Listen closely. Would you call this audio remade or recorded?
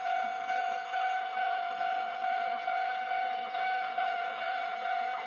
remade